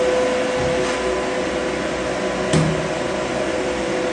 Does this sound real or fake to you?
real